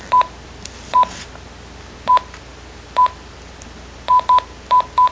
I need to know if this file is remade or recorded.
recorded